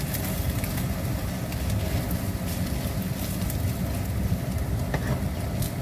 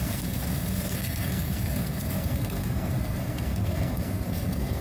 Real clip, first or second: first